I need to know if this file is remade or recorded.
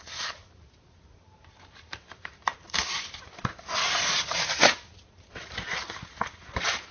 remade